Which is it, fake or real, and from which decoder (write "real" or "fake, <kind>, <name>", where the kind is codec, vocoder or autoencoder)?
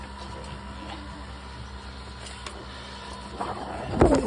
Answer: real